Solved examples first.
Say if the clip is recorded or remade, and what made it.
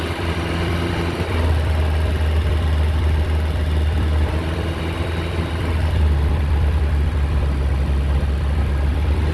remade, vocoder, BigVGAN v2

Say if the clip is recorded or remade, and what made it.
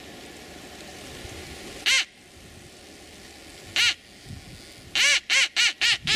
recorded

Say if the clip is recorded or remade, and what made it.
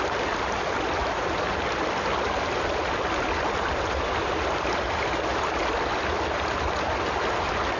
recorded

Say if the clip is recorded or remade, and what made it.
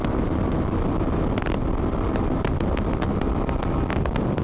recorded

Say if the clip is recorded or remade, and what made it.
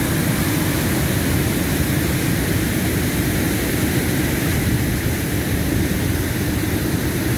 recorded